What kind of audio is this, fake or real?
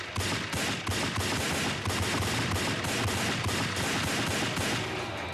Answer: real